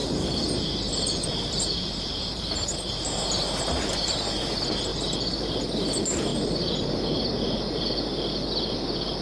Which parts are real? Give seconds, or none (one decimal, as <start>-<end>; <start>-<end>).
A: 2.4-9.2